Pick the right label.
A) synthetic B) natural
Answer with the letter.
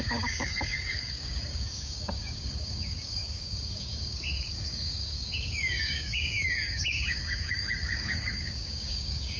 A